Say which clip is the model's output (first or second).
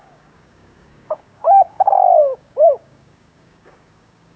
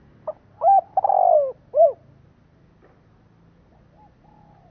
first